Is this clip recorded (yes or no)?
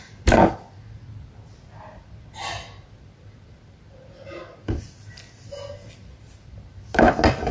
yes